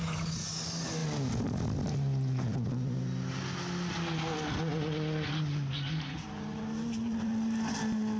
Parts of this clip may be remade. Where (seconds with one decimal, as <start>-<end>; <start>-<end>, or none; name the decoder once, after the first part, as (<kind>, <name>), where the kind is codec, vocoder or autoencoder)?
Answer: none